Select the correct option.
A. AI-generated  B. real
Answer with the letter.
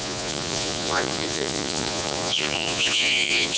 A